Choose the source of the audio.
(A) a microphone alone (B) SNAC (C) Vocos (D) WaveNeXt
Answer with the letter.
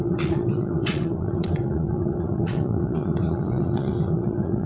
D